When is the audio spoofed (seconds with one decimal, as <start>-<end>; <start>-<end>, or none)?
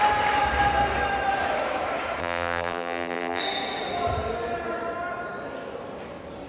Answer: 2.2-3.4